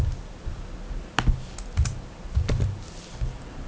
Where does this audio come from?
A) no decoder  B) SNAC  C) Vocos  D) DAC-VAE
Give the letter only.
A